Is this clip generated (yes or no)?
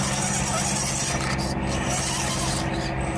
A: no